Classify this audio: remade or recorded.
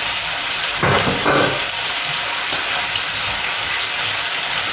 recorded